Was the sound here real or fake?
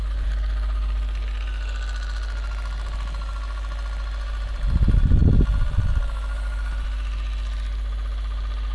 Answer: real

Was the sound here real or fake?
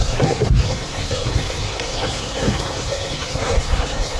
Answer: fake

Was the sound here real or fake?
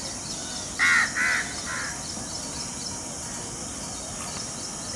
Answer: real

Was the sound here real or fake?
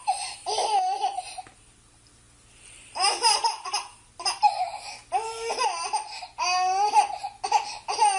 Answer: real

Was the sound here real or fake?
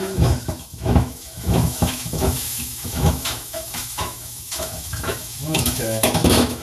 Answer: fake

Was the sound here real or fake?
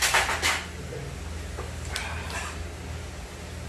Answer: real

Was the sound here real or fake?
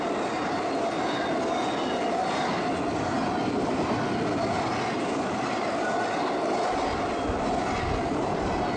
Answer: real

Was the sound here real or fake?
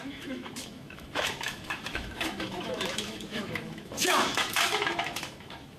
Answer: fake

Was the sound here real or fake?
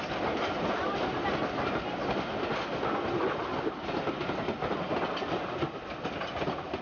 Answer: real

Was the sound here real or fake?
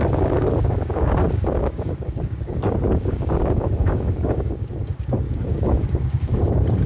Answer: fake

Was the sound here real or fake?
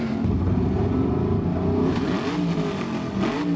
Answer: real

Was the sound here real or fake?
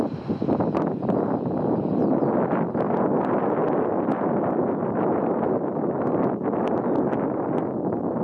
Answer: real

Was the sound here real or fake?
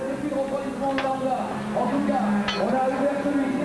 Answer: real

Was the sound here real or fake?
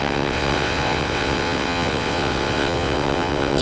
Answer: fake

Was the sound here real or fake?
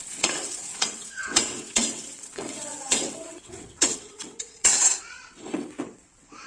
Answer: fake